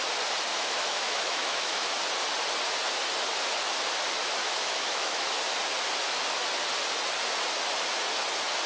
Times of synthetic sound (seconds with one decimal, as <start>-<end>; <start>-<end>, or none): 0.5-2.0; 4.4-5.3